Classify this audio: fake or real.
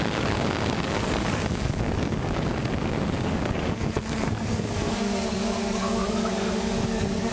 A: fake